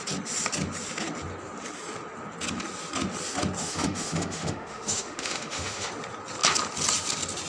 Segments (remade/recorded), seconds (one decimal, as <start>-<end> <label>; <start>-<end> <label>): 0.0-3.6 recorded; 3.6-5.9 remade; 5.9-7.5 recorded